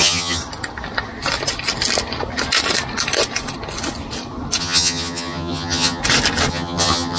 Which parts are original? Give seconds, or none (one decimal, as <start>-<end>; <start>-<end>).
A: 0.4-4.6; 6.0-6.5

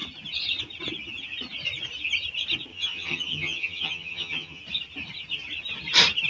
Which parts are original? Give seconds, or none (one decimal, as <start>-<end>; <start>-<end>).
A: 0.0-2.7; 4.6-6.3

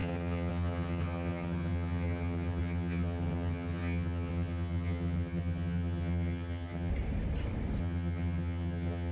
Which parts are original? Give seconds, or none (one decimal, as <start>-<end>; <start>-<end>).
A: 6.9-7.8

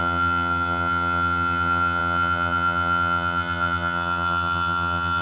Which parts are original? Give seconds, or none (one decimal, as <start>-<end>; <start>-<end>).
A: none

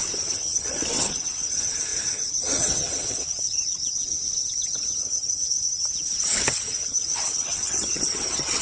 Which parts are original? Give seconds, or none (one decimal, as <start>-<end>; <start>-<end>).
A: none